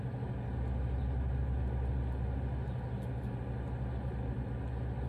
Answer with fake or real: real